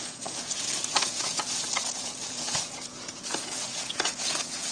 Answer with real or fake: fake